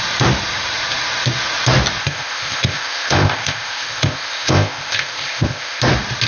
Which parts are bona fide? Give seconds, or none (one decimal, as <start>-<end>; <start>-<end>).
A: 0.0-2.0; 5.8-6.3